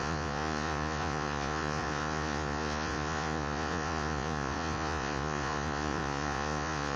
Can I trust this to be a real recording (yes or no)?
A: no